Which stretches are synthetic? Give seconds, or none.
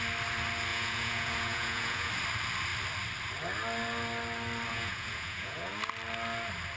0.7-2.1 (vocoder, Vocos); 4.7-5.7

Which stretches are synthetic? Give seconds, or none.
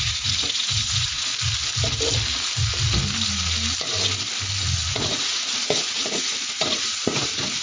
0.0-1.3 (vocoder, Vocos); 4.9-7.6